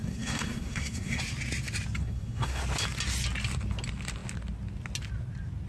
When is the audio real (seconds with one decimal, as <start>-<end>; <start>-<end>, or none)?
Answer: 1.2-2.0; 2.6-5.7

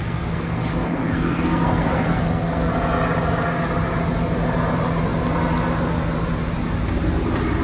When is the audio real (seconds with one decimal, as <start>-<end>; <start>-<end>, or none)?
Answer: 2.7-7.6